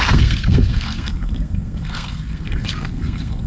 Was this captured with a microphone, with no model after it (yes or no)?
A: no